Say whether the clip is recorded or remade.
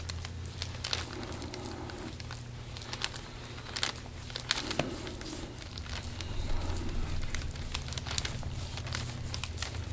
recorded